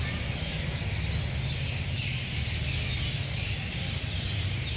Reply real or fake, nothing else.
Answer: real